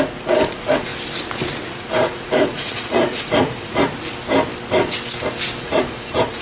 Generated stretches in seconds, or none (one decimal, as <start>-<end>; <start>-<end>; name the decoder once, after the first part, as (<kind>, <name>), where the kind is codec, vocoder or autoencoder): 0.0-0.9 (vocoder, Vocos); 1.7-3.8; 5.6-6.4